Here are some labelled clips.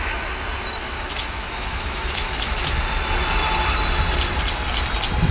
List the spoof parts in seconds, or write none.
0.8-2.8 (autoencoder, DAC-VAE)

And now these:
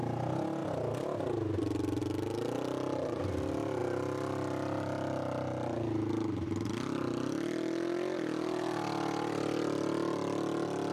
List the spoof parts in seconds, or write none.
none

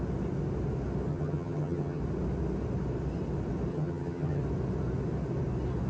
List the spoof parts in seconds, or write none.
1.1-2.0 (vocoder, HiFi-GAN); 3.7-4.4

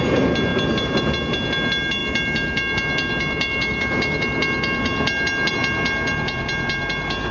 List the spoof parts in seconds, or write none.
0.5-1.0 (vocoder, BigVGAN v2)

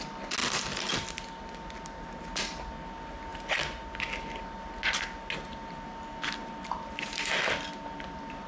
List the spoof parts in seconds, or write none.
none